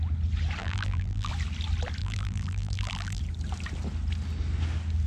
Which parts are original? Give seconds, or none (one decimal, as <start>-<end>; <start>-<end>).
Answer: 0.0-0.6; 1.3-2.0; 3.2-5.1